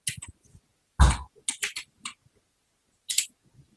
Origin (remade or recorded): recorded